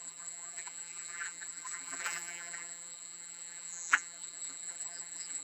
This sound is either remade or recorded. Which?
remade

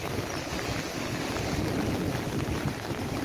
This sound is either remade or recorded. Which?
recorded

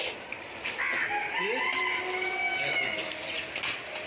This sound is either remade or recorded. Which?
recorded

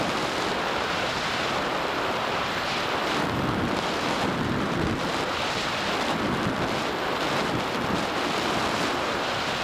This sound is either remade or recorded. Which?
remade